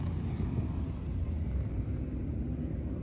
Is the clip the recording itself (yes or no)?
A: no